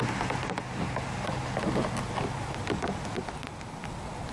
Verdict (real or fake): real